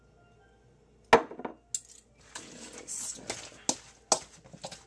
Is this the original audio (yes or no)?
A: yes